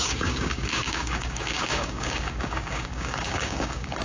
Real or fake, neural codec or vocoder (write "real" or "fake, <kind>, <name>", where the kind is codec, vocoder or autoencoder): fake, codec, DAC